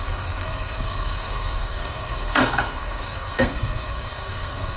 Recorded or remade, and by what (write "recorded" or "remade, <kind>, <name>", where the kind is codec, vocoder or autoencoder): remade, codec, SNAC